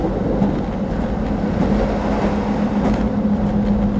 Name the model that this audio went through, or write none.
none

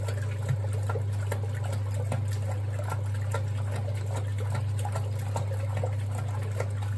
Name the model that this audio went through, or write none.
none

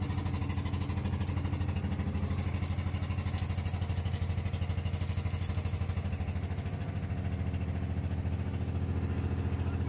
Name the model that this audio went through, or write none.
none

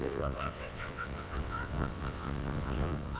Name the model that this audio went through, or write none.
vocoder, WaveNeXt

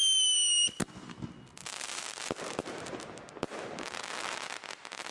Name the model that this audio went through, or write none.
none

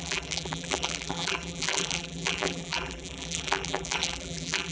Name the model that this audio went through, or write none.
vocoder, BigVGAN v2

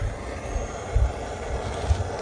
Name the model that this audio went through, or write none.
none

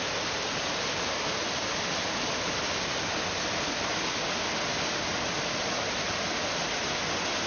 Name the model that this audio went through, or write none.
none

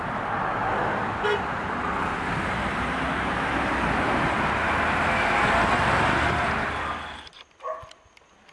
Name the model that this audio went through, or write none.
none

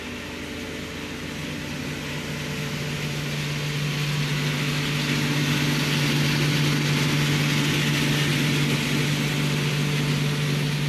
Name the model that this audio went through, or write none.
none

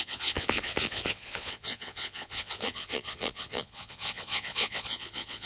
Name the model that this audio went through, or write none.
vocoder, Vocos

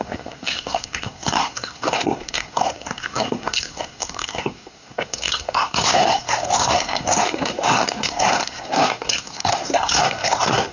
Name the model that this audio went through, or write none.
codec, SNAC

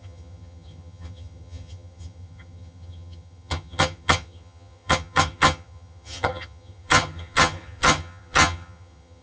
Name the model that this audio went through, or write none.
vocoder, HiFi-GAN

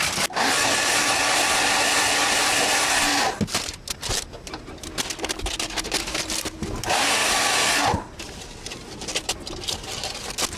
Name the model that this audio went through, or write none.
none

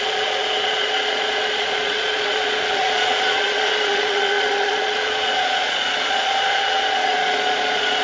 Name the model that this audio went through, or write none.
vocoder, Vocos